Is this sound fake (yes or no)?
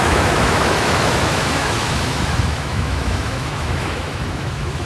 yes